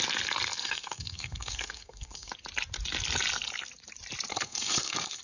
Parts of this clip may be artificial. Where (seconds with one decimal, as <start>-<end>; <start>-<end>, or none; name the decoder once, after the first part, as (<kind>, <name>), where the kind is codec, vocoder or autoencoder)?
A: 0.6-2.3 (codec, SNAC); 4.3-5.2